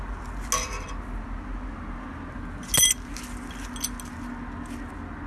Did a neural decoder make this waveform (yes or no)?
no